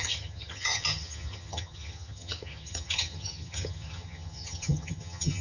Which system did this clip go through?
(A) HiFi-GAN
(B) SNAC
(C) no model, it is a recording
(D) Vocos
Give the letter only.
A